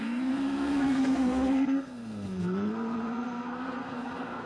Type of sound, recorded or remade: remade